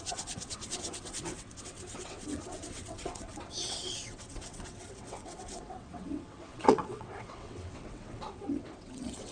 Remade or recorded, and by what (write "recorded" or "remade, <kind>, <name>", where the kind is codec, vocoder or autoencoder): remade, vocoder, WaveNeXt